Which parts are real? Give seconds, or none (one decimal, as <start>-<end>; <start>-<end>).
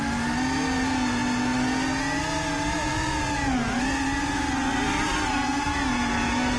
0.0-6.6